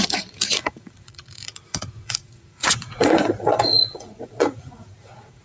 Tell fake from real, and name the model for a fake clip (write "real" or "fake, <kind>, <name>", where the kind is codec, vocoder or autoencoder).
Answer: fake, vocoder, Vocos